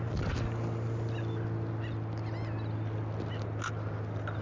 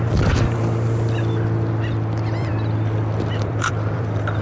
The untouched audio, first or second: first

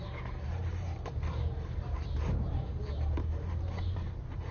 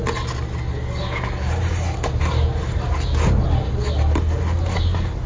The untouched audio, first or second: second